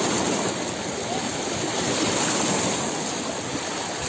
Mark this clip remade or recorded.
recorded